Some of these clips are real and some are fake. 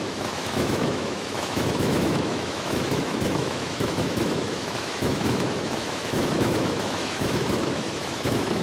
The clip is fake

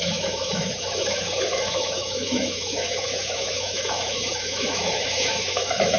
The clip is fake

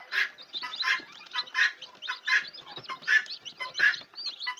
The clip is real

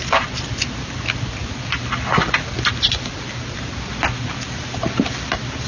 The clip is real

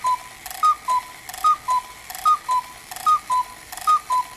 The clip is real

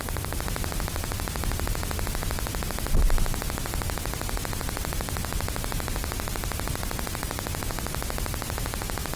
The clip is real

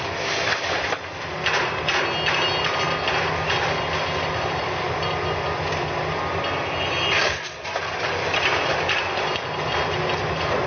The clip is real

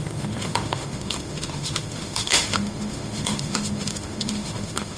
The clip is fake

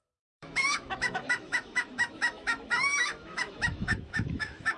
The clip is fake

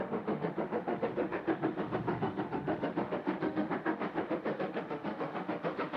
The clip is fake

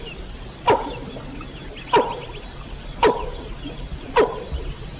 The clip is real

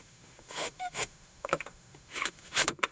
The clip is fake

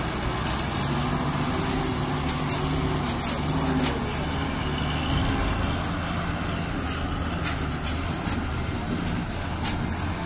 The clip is real